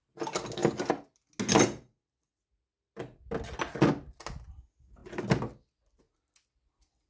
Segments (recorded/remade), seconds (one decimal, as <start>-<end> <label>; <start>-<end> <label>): 0.0-7.1 recorded